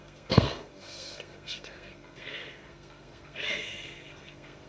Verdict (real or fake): fake